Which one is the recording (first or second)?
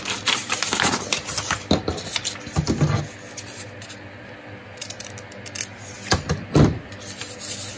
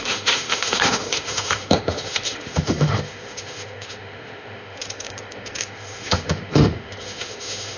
first